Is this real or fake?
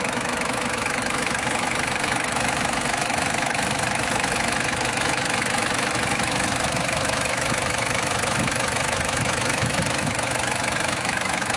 fake